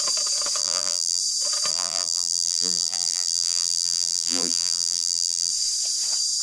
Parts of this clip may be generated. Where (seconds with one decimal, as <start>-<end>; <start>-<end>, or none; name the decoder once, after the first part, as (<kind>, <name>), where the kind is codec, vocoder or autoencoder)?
0.6-1.2 (vocoder, BigVGAN v2); 1.7-5.5